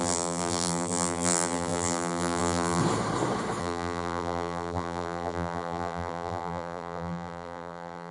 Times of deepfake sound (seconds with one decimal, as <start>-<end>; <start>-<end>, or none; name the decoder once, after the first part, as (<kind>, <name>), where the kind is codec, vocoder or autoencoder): 0.0-2.8 (vocoder, BigVGAN v2); 3.6-8.1